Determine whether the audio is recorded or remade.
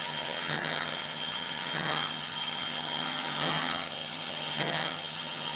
remade